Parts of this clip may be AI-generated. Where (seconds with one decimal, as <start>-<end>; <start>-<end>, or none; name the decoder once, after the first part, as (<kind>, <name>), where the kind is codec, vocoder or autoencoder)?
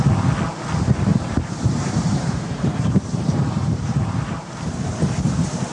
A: 1.1-4.5 (vocoder, BigVGAN v2)